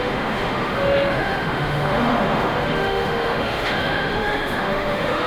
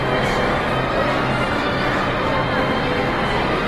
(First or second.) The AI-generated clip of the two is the first